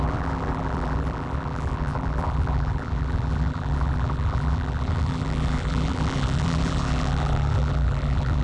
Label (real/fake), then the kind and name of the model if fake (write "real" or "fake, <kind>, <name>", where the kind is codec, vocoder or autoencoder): fake, vocoder, BigVGAN v2